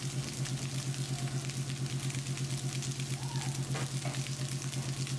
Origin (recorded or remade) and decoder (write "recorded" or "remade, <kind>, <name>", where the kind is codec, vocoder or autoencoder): recorded